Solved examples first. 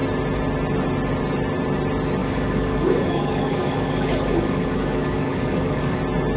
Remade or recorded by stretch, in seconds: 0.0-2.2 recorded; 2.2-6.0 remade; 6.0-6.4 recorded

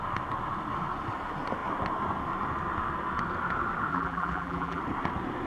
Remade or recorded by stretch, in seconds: 0.0-3.9 recorded; 3.9-4.8 remade; 4.8-5.5 recorded

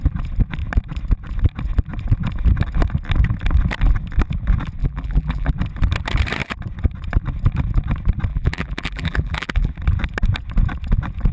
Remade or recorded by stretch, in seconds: 0.0-4.8 recorded; 4.8-5.5 remade; 5.5-8.3 recorded; 8.3-9.7 remade; 9.7-11.3 recorded

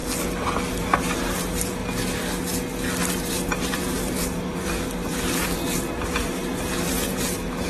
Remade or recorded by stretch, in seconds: 0.0-0.7 recorded; 0.7-1.8 remade; 1.8-3.1 recorded; 3.1-7.7 remade

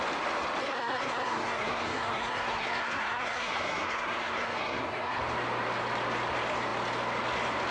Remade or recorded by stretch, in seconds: 0.0-0.6 recorded; 0.6-5.2 remade; 5.2-7.7 recorded

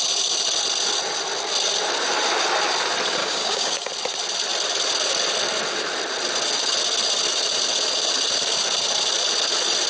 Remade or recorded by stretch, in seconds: 0.0-3.2 recorded; 3.2-3.9 remade; 3.9-9.9 recorded

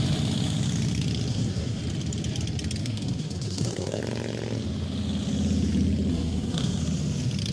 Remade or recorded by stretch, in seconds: 0.0-1.3 recorded; 1.3-1.8 remade; 1.8-2.8 recorded; 2.8-4.0 remade; 4.0-6.1 recorded; 6.1-6.8 remade; 6.8-7.5 recorded